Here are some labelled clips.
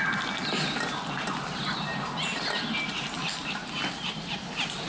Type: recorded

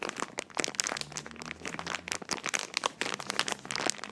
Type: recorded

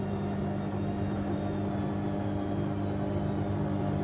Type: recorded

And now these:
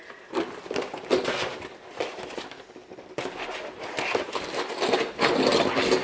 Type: recorded